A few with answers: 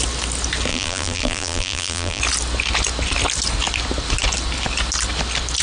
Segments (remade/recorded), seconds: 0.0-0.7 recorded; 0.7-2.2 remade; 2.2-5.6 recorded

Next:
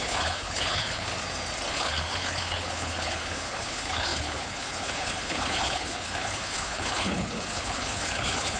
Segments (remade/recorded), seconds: 0.0-1.1 remade; 1.1-1.7 recorded; 1.7-8.6 remade

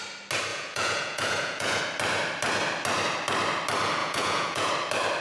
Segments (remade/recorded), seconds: 0.0-0.5 recorded; 0.5-1.8 remade; 1.8-4.0 recorded; 4.0-4.7 remade; 4.7-5.2 recorded

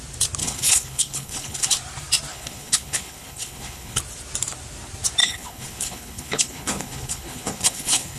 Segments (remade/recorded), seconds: 0.0-0.4 recorded; 0.4-1.7 remade; 1.7-2.3 recorded; 2.3-4.0 remade; 4.0-5.2 recorded; 5.2-8.2 remade

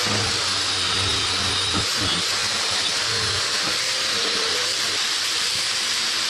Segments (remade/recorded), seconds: 0.0-2.4 recorded; 2.4-6.3 remade

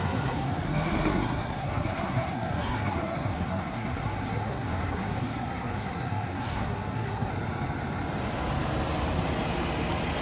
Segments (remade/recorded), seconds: 0.0-7.3 remade; 7.3-10.2 recorded

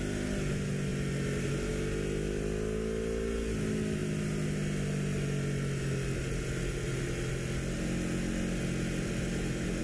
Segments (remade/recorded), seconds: 0.0-9.8 recorded